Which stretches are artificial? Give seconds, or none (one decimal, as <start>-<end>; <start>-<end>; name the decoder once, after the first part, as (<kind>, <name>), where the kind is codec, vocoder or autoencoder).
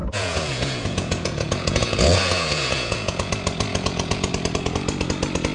0.0-3.3 (vocoder, Vocos); 3.7-4.3